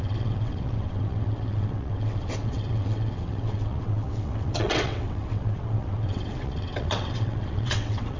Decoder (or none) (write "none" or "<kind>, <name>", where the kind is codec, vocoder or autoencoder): vocoder, WaveNeXt